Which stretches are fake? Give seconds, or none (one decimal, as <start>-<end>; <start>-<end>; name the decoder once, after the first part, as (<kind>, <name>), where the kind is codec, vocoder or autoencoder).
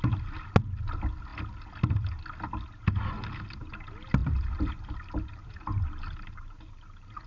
4.2-7.3 (vocoder, BigVGAN v2)